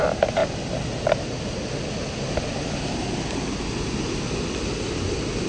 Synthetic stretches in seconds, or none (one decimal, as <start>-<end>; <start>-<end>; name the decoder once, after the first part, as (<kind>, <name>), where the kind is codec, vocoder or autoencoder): none